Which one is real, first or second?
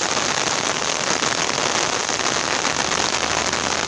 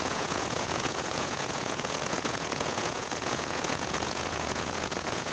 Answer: first